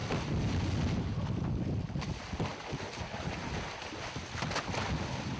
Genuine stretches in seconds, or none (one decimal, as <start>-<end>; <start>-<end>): 0.0-5.4